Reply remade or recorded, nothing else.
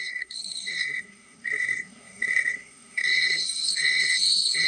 remade